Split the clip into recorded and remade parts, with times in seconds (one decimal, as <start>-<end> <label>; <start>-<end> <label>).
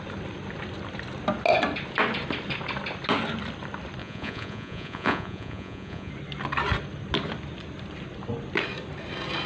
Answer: 0.0-4.0 recorded; 4.0-6.1 remade; 6.1-9.5 recorded